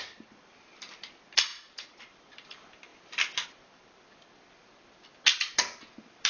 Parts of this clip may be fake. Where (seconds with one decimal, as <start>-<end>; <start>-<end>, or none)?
1.5-2.0